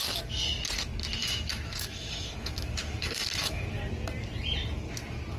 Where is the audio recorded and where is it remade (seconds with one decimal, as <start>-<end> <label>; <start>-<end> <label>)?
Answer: 0.0-1.2 recorded; 1.2-3.8 remade; 3.8-5.4 recorded